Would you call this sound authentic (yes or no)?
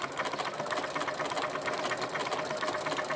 yes